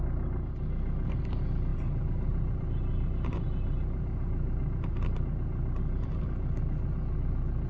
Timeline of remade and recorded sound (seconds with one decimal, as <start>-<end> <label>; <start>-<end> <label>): 0.0-1.7 recorded; 1.7-6.2 remade; 6.2-7.7 recorded